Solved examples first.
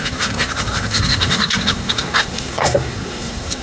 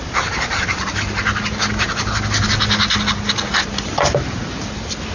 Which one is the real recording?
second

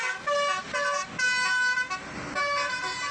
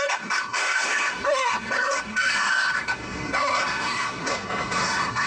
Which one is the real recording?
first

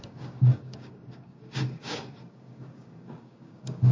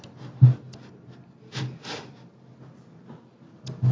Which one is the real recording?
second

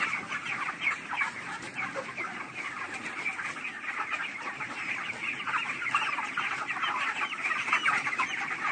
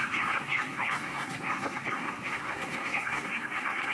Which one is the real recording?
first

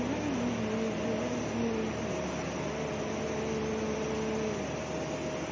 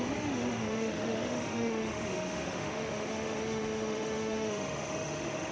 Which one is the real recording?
first